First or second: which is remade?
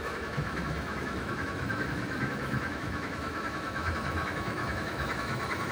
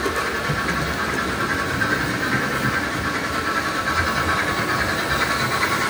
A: first